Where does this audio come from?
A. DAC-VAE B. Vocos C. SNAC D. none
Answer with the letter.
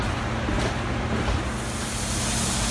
D